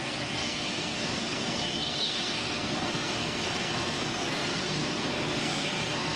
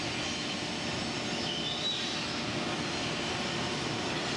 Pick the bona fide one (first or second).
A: second